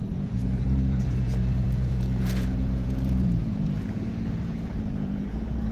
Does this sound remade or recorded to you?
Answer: remade